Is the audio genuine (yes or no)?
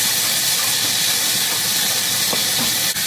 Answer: yes